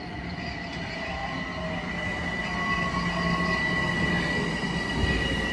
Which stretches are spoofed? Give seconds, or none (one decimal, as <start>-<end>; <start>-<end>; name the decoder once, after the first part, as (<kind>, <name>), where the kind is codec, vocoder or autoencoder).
none